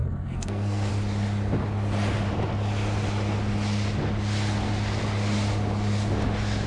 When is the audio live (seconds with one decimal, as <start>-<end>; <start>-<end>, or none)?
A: 0.9-6.7